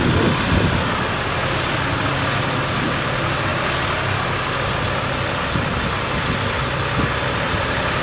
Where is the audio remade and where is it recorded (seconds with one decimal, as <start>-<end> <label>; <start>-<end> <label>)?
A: 0.0-8.0 recorded